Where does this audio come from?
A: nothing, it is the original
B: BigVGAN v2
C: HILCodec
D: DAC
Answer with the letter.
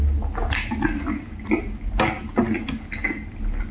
A